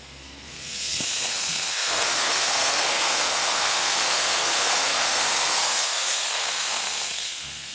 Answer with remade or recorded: remade